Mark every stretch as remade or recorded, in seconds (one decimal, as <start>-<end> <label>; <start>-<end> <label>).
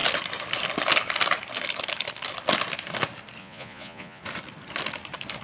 0.0-3.4 recorded; 3.4-4.2 remade; 4.2-5.4 recorded